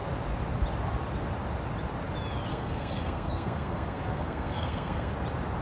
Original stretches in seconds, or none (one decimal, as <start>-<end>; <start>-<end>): 0.0-2.5; 5.1-5.6